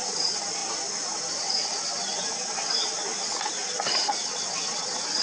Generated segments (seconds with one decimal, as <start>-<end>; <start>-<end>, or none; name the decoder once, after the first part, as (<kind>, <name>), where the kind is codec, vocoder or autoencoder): 4.2-5.2 (vocoder, WaveNeXt)